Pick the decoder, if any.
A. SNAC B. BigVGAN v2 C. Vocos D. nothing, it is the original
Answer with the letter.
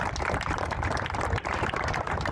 D